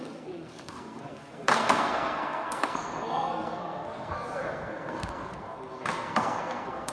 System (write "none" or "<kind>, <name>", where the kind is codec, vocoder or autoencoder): codec, SNAC